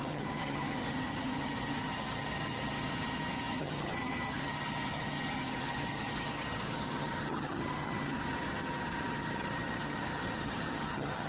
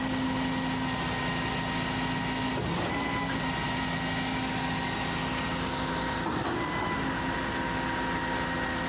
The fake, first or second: first